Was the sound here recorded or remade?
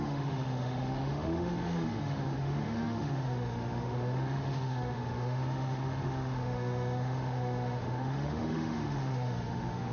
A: remade